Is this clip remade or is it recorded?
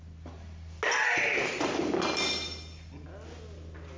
recorded